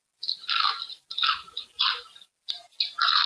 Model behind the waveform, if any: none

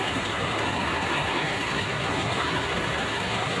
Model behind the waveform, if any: codec, SNAC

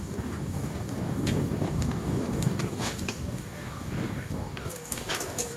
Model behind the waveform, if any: codec, DAC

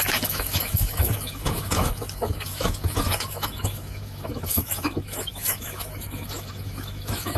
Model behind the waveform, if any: autoencoder, DAC-VAE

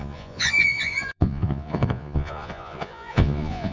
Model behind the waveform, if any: vocoder, Vocos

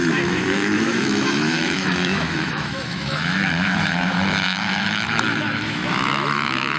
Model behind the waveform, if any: autoencoder, DAC-VAE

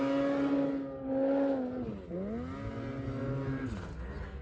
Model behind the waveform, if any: none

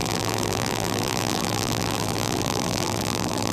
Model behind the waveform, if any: vocoder, BigVGAN v2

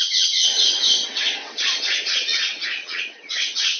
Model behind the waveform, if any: vocoder, WaveNeXt